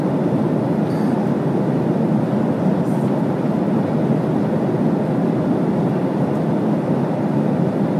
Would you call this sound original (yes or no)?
yes